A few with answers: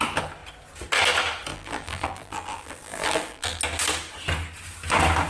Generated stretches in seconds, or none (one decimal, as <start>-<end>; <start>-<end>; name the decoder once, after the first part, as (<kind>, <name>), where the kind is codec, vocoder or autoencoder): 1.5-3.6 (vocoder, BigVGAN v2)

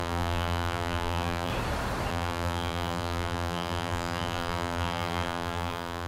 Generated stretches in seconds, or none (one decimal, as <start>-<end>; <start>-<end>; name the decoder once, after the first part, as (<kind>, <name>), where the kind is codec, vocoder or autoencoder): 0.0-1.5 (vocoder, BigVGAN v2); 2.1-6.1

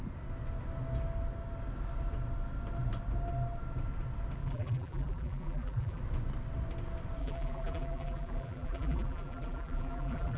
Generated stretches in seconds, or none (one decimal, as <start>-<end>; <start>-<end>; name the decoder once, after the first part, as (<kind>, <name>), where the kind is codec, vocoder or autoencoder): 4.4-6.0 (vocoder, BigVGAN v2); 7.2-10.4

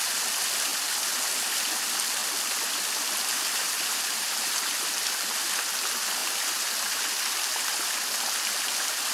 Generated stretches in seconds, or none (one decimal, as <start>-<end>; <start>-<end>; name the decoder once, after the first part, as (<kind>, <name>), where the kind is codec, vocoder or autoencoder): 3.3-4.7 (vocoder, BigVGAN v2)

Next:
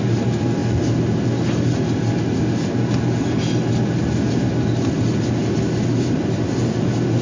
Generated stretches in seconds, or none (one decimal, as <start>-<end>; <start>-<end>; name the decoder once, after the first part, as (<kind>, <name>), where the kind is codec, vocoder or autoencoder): none